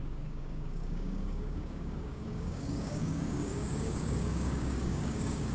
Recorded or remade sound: remade